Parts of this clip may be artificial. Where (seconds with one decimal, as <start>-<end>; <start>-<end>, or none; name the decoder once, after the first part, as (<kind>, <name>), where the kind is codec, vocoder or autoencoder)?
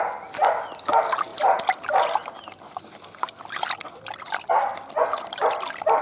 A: none